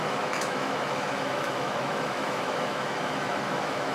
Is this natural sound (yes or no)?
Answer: no